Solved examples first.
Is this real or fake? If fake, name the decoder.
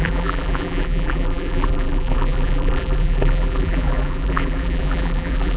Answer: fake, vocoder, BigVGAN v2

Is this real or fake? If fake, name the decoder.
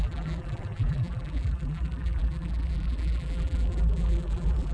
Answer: fake, vocoder, BigVGAN v2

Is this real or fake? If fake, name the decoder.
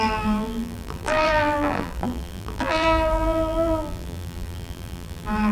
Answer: fake, vocoder, BigVGAN v2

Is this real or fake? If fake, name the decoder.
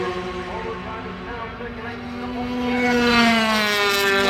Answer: real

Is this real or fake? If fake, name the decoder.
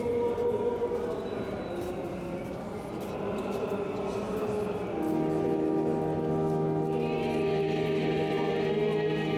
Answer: real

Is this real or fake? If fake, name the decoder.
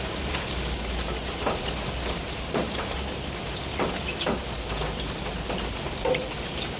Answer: real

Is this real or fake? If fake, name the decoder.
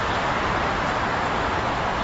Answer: real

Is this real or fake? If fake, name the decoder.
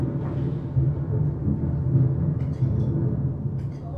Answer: real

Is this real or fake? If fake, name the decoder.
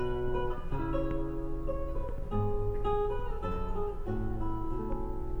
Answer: real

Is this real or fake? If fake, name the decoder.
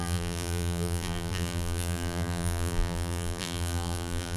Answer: fake, vocoder, BigVGAN v2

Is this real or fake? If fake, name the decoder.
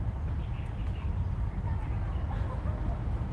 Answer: real